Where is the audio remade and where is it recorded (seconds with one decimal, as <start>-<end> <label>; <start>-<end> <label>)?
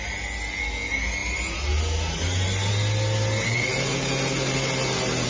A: 0.0-5.3 recorded